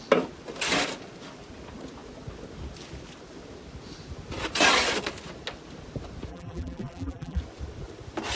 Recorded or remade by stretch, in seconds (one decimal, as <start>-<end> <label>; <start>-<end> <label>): 0.0-6.3 recorded; 6.3-7.4 remade; 7.4-8.4 recorded